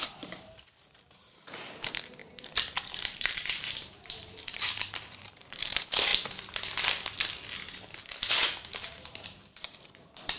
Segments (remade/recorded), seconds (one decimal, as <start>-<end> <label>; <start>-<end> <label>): 0.0-2.2 remade; 2.2-2.8 recorded; 2.8-6.1 remade; 6.1-8.3 recorded; 8.3-10.4 remade